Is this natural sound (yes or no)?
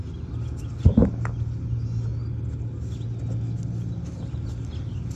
yes